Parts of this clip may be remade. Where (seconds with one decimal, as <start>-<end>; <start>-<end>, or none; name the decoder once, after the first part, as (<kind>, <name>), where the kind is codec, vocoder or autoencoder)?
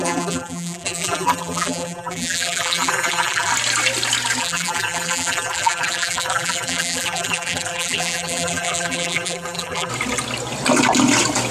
0.0-3.5 (vocoder, BigVGAN v2); 4.4-9.9